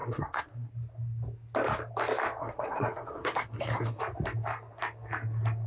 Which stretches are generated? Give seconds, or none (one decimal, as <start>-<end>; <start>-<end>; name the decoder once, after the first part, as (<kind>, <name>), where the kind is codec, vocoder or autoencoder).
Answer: 0.0-0.7 (codec, SNAC); 2.4-4.0